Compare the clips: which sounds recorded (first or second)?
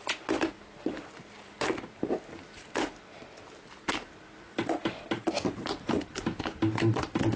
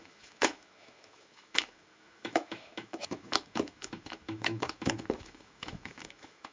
first